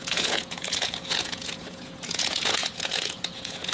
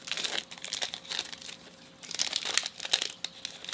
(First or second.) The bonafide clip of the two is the second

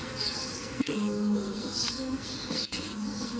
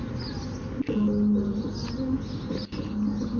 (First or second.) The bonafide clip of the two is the second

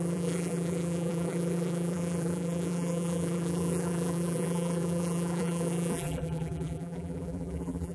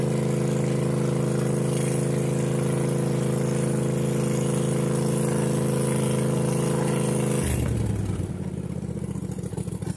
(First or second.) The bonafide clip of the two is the second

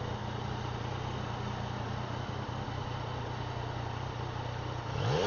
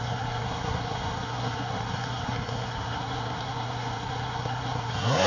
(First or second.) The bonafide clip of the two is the first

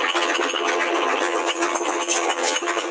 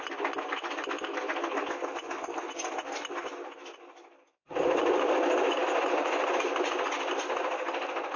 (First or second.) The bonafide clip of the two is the second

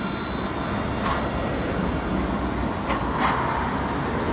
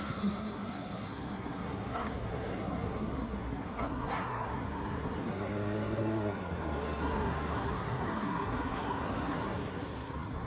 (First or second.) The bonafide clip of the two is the first